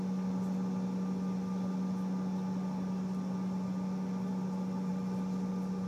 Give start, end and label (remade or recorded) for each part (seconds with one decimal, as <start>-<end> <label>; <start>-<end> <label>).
0.0-5.9 recorded